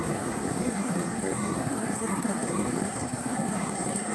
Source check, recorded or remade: remade